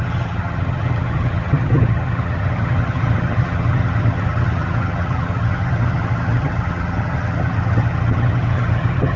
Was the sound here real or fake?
fake